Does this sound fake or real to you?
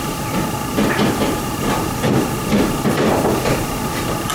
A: fake